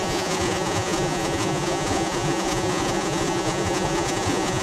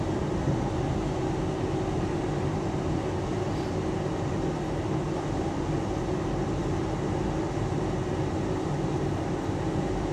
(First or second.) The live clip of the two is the second